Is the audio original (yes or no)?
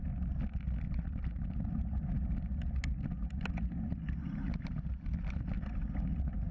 yes